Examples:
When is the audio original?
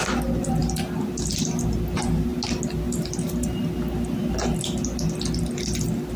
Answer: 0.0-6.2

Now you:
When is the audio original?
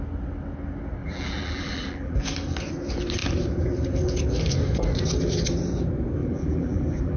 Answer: 0.0-1.0; 2.2-6.2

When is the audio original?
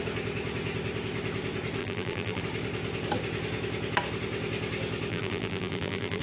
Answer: 0.0-1.8; 2.4-5.1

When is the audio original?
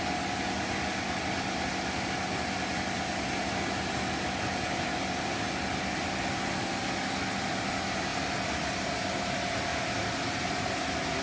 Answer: 0.0-8.1; 9.0-9.7; 10.5-11.2